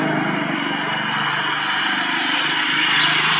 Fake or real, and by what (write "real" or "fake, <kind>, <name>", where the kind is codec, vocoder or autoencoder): real